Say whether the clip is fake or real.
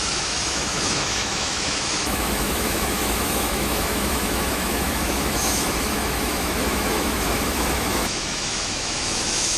fake